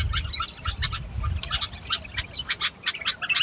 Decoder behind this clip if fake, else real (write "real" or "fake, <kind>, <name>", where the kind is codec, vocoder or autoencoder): real